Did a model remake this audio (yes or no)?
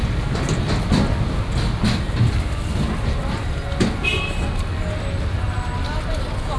no